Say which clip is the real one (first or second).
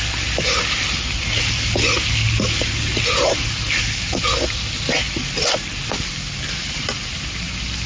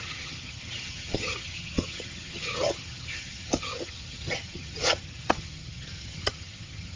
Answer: first